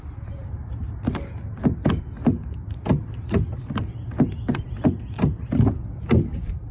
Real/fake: real